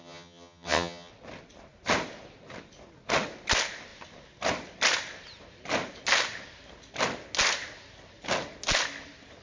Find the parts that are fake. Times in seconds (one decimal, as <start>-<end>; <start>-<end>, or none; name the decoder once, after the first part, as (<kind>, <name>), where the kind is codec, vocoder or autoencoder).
0.0-1.1 (vocoder, HiFi-GAN)